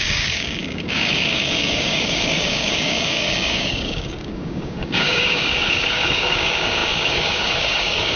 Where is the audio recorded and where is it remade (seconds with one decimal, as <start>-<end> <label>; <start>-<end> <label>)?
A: 0.0-8.2 remade